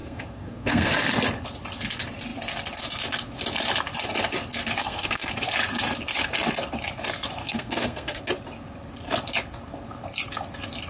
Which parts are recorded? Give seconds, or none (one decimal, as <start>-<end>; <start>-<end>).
0.9-4.8; 5.3-7.4; 8.2-10.9